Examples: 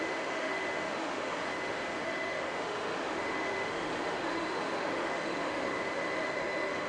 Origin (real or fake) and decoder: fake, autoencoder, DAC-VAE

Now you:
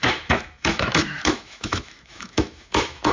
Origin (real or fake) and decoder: fake, autoencoder, DAC-VAE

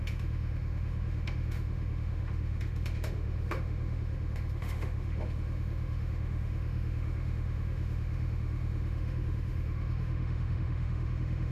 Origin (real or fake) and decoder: fake, autoencoder, DAC-VAE